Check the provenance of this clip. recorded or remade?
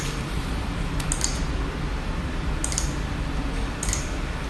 recorded